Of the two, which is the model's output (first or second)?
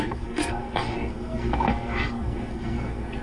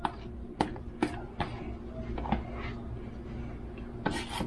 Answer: first